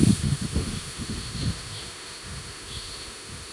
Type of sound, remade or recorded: remade